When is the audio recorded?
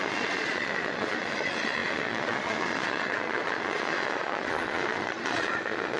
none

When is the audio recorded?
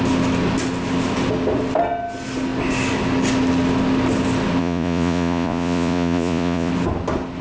0.0-4.6; 6.7-7.4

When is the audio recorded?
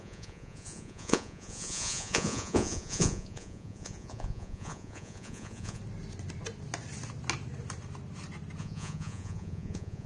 5.8-8.6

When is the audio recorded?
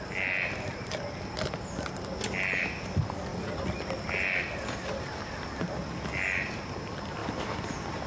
0.0-8.1